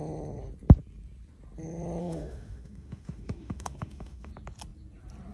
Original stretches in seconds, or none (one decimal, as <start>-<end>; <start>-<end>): 0.0-2.0; 4.3-5.3